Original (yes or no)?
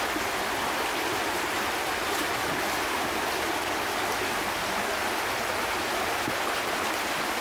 yes